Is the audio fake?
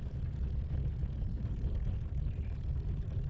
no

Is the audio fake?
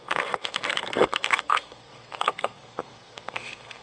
yes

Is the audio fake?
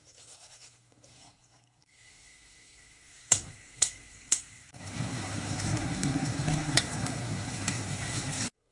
yes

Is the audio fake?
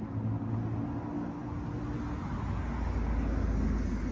no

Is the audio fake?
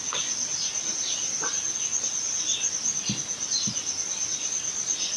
no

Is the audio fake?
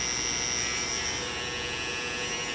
no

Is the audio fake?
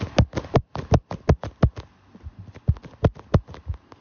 no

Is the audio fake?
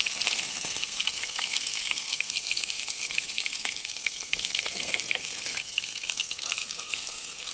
yes